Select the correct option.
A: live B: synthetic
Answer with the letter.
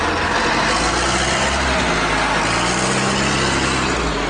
A